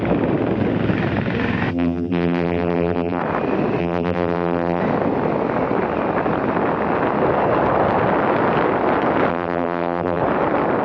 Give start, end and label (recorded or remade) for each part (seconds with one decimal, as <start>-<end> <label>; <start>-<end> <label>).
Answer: 0.0-1.7 recorded; 1.7-3.2 remade; 3.2-3.8 recorded; 3.8-4.8 remade; 4.8-9.3 recorded; 9.3-10.2 remade; 10.2-10.8 recorded